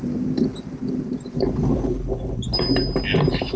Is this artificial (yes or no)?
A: no